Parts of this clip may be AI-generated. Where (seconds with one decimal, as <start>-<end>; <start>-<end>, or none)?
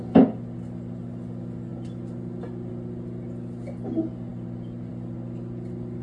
none